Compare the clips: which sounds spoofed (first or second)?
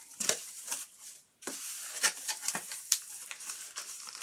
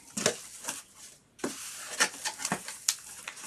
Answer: first